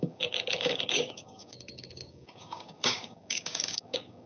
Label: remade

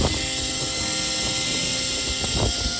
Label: recorded